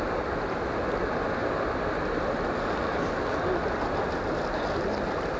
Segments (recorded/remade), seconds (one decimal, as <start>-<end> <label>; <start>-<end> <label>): 0.0-5.4 recorded

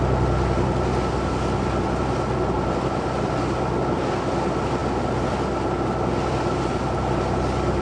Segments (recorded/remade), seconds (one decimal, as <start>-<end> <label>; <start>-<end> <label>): 0.0-7.8 recorded

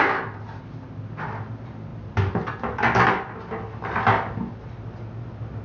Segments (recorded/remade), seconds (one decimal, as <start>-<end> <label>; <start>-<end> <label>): 0.0-5.6 recorded

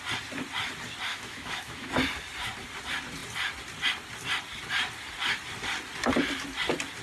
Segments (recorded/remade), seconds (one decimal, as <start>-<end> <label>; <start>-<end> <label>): 0.0-1.1 recorded; 1.1-1.9 remade; 1.9-7.0 recorded

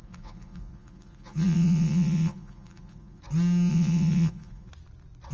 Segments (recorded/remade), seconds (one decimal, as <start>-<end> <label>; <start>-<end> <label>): 0.0-3.2 remade; 3.2-3.7 recorded; 3.7-4.7 remade; 4.7-5.3 recorded

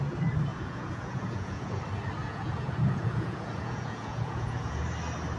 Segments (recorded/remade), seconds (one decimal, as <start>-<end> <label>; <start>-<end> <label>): 0.0-0.5 recorded; 0.5-1.8 remade; 1.8-2.2 recorded; 2.2-4.8 remade; 4.8-5.4 recorded

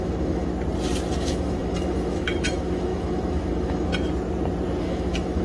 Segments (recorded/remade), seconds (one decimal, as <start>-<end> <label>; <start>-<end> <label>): 0.0-0.5 remade; 0.5-1.2 recorded; 1.2-3.9 remade; 3.9-4.8 recorded; 4.8-5.4 remade

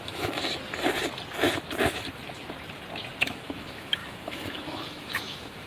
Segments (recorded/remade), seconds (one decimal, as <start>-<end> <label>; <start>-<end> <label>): 0.0-0.4 remade; 0.4-3.2 recorded; 3.2-5.7 remade